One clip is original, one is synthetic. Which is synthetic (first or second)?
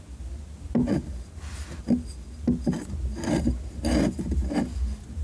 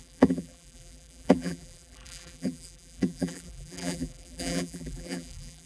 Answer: second